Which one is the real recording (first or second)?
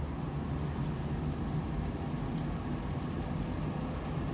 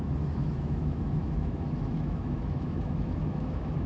first